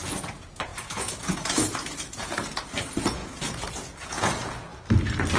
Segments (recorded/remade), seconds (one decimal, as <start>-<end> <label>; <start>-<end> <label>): 0.0-4.7 remade; 4.7-5.4 recorded